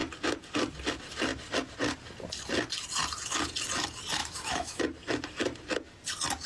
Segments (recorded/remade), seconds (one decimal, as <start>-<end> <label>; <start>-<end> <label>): 0.0-4.2 recorded; 4.2-4.8 remade; 4.8-6.5 recorded